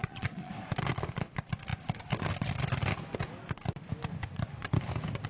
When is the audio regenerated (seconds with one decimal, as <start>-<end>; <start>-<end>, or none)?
0.0-0.5